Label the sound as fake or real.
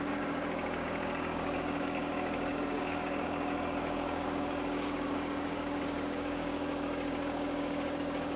fake